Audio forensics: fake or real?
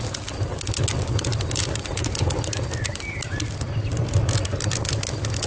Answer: real